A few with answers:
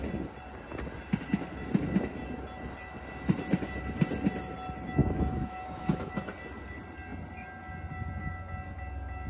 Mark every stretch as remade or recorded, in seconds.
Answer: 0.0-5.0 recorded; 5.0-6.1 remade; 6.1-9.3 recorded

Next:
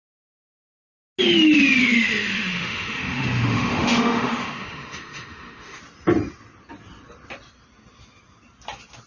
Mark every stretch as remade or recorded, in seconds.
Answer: 0.0-1.8 recorded; 1.8-5.8 remade; 5.8-9.1 recorded

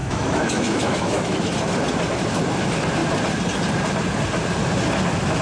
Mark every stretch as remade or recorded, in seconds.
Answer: 0.0-1.5 remade; 1.5-5.4 recorded

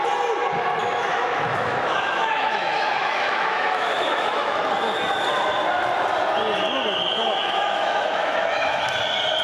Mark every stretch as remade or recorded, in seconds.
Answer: 0.0-0.8 recorded; 0.8-4.6 remade; 4.6-7.0 recorded; 7.0-8.8 remade; 8.8-9.4 recorded

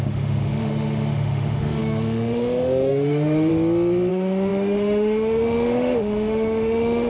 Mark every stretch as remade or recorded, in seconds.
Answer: 0.0-3.5 remade; 3.5-4.1 recorded; 4.1-7.1 remade

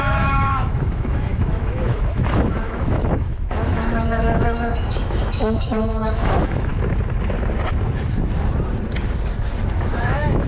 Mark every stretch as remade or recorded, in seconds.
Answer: 0.0-6.7 remade; 6.7-9.7 recorded; 9.7-10.5 remade

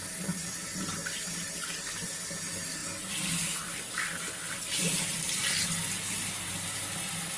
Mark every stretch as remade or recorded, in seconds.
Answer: 0.0-7.4 recorded

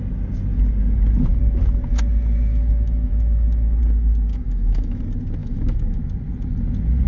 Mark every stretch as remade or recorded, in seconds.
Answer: 0.0-2.5 recorded; 2.5-3.8 remade; 3.8-4.3 recorded; 4.3-5.0 remade; 5.0-5.4 recorded; 5.4-6.0 remade; 6.0-7.1 recorded